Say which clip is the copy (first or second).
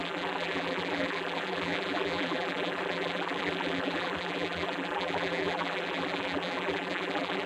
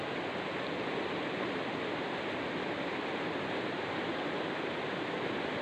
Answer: first